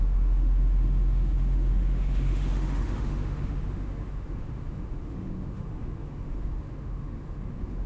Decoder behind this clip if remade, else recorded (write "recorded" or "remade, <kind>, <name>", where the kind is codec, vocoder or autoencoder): remade, autoencoder, DAC-VAE